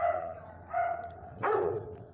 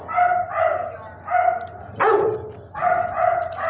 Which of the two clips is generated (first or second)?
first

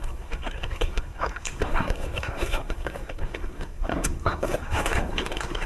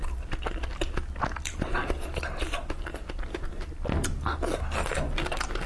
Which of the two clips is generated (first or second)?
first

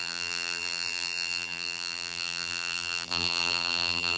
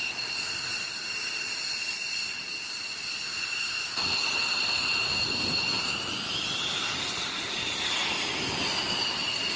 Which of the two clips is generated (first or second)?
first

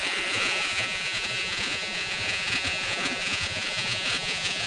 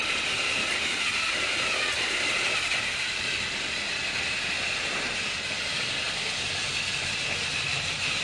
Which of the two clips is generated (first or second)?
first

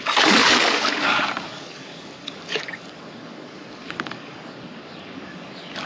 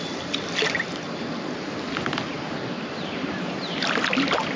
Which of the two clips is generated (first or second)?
first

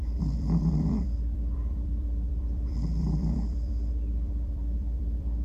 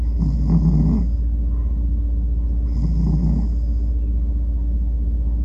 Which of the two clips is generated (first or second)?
first